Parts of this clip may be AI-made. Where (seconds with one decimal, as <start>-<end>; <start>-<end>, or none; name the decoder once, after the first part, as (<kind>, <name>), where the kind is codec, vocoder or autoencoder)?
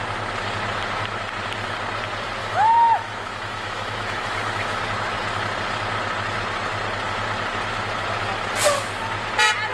2.4-4.8 (autoencoder, DAC-VAE)